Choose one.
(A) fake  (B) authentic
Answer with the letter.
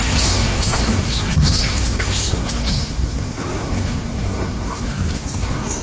A